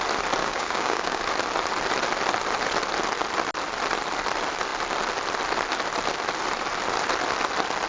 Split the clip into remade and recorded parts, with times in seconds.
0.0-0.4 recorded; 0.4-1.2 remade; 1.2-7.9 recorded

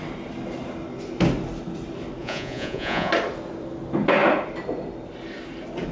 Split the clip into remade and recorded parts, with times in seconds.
0.0-2.2 recorded; 2.2-3.1 remade; 3.1-5.9 recorded